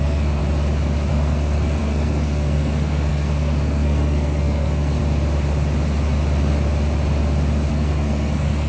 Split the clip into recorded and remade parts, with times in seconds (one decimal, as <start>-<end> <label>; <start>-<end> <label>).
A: 0.0-0.4 remade; 0.4-1.1 recorded; 1.1-5.0 remade; 5.0-7.7 recorded; 7.7-8.7 remade